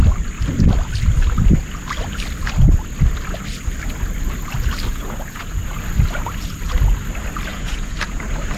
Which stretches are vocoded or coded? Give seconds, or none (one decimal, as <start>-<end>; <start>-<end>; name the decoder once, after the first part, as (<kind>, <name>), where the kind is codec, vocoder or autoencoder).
4.9-5.7 (vocoder, Vocos); 7.5-8.2